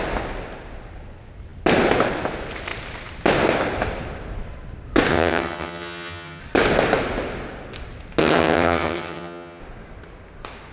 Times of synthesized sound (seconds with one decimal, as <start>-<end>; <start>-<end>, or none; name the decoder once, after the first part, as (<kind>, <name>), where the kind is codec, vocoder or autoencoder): 5.1-6.4 (vocoder, HiFi-GAN); 8.2-9.6